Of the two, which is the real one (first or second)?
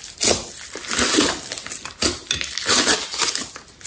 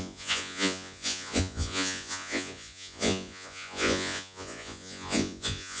first